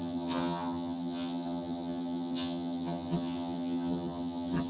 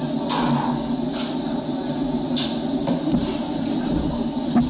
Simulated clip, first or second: first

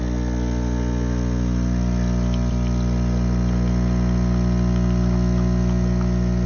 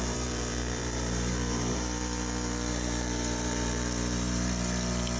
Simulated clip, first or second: second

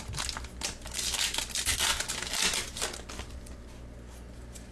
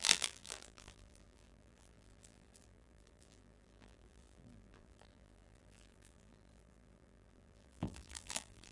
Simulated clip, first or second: second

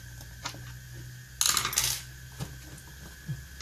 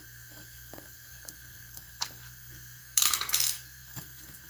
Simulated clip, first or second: second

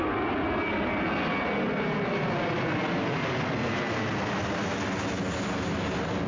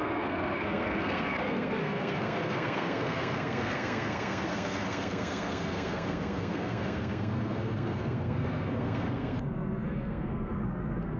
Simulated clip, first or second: second